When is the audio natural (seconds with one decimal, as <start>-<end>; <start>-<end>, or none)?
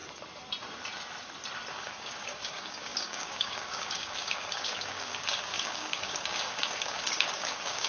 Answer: 0.0-1.7